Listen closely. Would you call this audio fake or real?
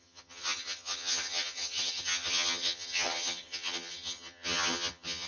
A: fake